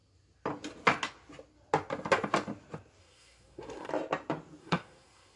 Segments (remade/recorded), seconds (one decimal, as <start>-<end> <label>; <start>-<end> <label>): 0.0-3.0 recorded; 3.0-3.9 remade; 3.9-4.6 recorded; 4.6-5.4 remade